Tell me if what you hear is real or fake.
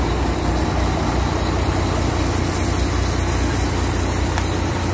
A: real